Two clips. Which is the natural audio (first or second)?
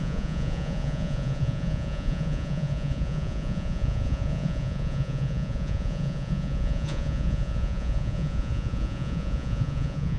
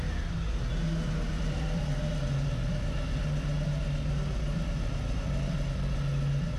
second